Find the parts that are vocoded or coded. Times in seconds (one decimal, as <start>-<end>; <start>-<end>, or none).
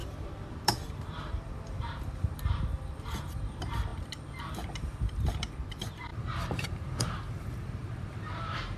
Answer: 0.0-8.8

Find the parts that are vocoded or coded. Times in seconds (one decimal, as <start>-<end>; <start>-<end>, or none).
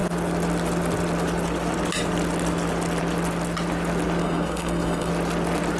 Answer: 4.2-5.1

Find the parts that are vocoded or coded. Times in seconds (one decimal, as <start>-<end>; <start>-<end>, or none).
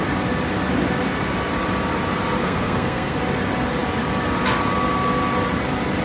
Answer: 2.4-3.2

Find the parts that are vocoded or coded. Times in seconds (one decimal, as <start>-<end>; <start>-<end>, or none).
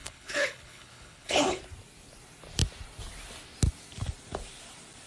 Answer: 0.0-1.6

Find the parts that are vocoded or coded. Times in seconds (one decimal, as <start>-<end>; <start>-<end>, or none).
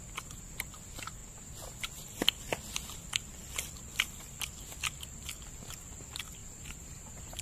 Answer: 6.4-7.4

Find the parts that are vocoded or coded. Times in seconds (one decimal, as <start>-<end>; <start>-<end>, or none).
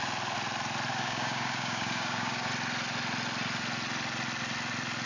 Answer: 0.9-2.5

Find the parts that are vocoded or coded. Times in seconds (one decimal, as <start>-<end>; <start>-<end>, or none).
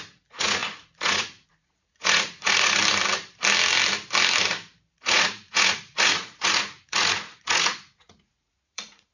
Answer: 0.0-2.8; 4.9-9.1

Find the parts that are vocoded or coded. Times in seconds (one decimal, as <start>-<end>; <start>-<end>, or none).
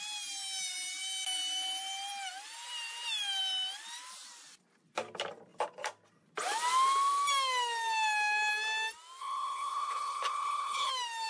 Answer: 9.2-10.9